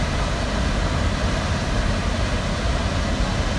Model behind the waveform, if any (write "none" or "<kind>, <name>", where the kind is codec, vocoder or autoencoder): none